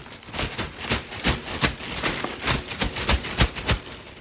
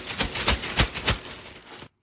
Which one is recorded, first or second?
second